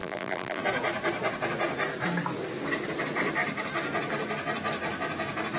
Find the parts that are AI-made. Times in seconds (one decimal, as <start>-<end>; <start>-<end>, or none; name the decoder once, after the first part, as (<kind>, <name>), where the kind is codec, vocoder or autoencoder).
0.0-0.6 (vocoder, BigVGAN v2)